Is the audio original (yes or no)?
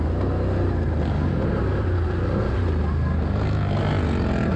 yes